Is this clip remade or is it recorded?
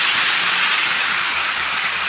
recorded